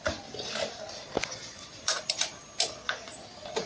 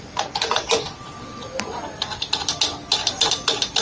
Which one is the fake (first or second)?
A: first